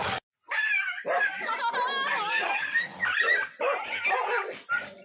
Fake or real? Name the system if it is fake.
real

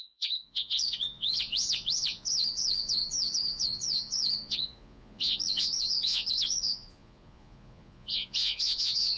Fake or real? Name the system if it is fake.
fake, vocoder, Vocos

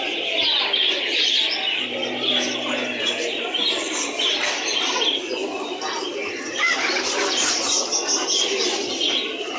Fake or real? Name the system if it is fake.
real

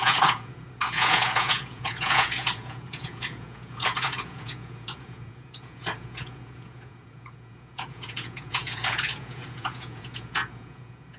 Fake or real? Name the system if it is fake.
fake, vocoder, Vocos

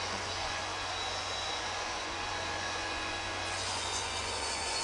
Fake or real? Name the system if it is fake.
fake, vocoder, Vocos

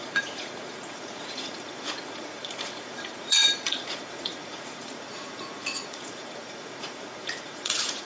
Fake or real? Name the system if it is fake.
fake, vocoder, Vocos